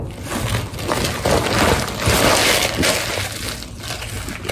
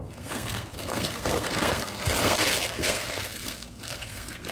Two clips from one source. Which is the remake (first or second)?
second